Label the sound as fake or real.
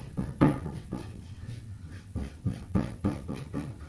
fake